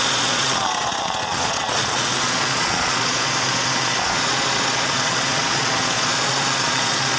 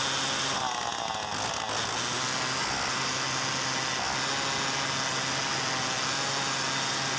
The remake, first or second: first